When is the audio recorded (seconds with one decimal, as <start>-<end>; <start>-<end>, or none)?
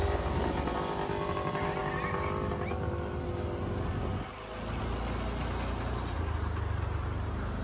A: 0.0-7.6